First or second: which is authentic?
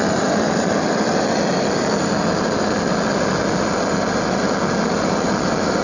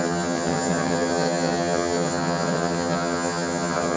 first